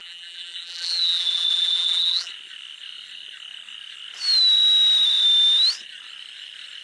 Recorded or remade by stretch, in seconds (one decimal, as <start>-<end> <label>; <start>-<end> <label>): 0.0-2.3 remade; 2.3-6.8 recorded